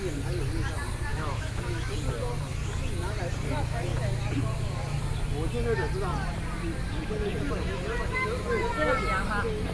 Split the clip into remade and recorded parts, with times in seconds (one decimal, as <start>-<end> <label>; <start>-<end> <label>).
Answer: 0.0-1.1 recorded; 1.1-1.9 remade; 1.9-9.7 recorded